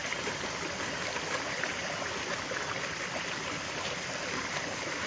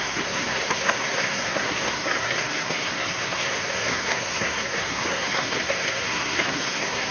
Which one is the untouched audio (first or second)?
first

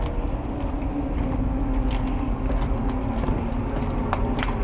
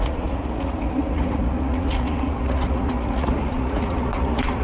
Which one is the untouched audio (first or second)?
first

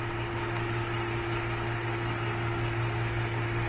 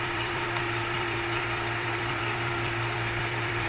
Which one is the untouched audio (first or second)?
first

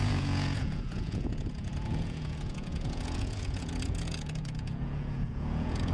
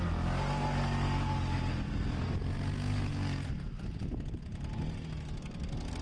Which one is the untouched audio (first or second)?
second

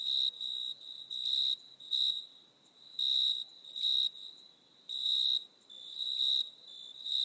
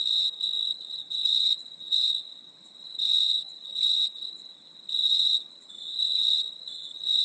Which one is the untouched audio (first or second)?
first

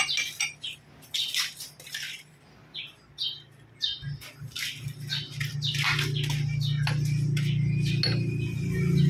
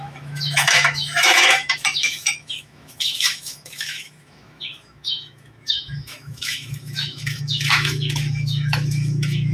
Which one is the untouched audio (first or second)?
first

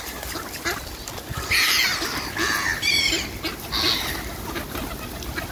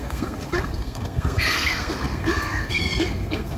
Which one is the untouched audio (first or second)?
first